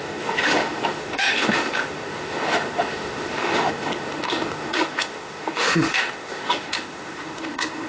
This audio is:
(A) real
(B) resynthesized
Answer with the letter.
B